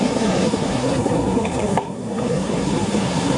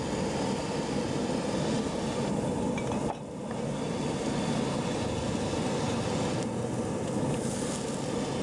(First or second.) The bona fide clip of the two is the second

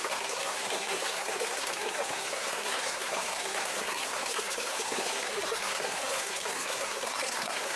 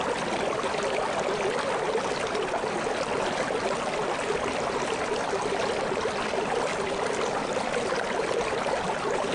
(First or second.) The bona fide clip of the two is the second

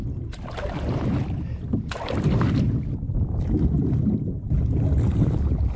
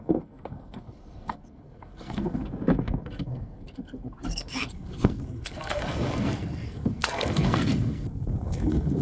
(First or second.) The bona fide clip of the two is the first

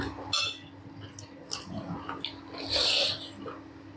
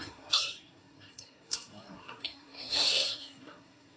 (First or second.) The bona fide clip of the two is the first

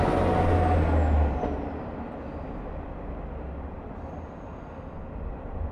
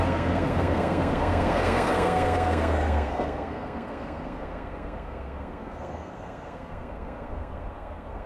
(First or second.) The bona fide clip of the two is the first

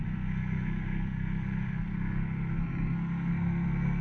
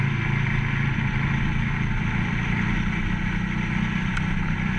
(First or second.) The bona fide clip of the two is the second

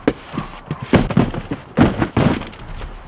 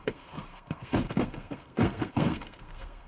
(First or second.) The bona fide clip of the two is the first